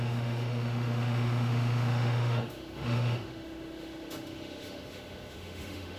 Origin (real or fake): fake